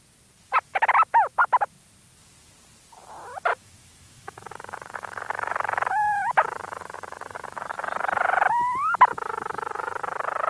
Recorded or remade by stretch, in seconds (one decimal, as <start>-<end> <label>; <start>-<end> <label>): 0.0-3.5 recorded; 3.5-7.8 remade; 7.8-10.5 recorded